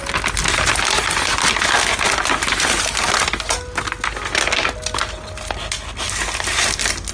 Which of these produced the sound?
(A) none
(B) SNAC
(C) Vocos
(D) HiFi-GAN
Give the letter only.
A